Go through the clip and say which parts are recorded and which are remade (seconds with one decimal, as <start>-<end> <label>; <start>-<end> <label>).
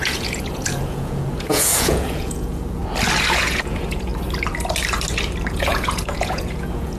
0.0-2.8 remade; 2.8-3.3 recorded; 3.3-4.1 remade; 4.1-5.5 recorded; 5.5-7.0 remade